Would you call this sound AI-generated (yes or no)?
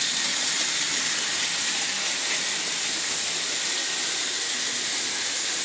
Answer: no